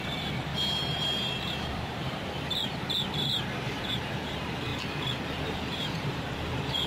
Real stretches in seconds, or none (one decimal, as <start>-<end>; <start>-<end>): 0.5-1.7; 4.7-5.4

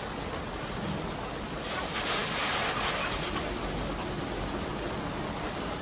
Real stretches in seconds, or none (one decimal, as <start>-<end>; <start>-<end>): 0.0-5.8